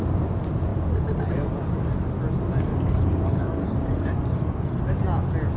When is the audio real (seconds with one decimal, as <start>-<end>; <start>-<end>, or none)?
0.0-2.7; 5.0-5.6